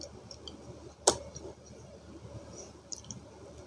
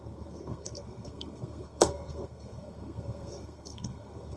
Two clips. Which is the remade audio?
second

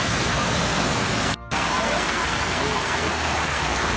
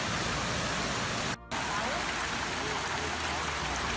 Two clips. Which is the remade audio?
first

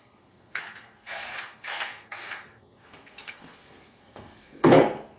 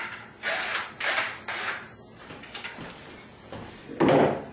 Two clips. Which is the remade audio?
first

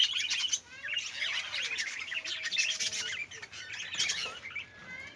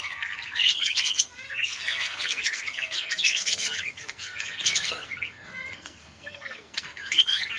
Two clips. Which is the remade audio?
second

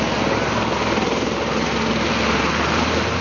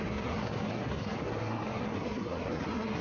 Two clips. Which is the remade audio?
second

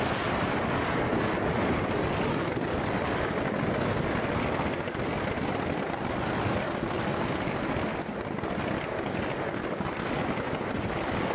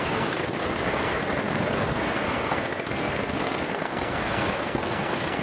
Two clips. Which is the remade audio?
second